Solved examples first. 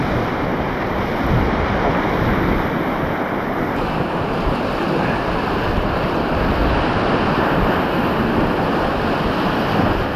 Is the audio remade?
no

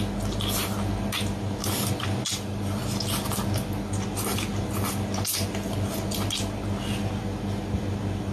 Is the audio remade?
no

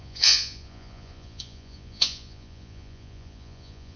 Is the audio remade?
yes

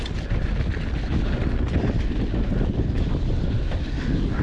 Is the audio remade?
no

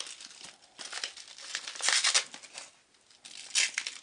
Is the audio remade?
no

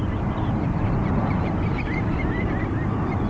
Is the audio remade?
yes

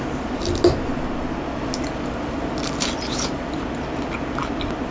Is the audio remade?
no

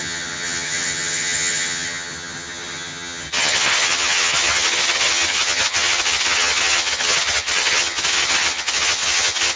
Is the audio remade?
yes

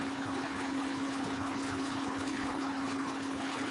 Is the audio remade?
yes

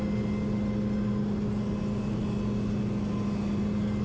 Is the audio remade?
no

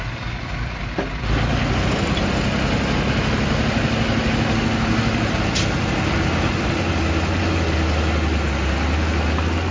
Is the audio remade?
no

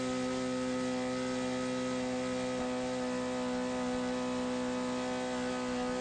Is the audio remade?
no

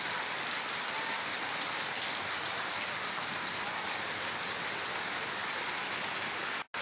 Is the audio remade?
no